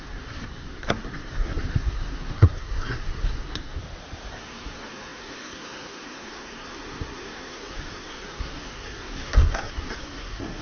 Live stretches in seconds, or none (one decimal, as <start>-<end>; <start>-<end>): 3.8-4.3